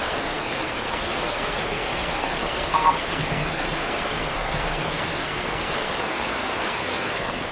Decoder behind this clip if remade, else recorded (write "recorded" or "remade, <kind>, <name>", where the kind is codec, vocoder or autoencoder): remade, codec, SNAC